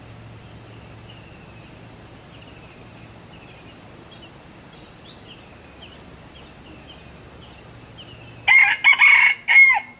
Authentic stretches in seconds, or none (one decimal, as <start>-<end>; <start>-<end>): 0.0-10.0